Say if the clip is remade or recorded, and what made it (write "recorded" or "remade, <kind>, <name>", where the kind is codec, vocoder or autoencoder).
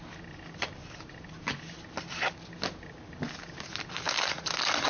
recorded